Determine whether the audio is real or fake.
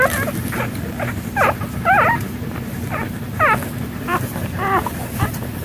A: real